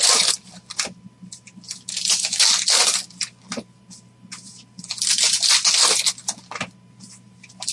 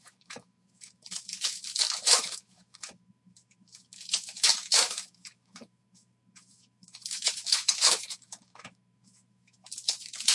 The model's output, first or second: second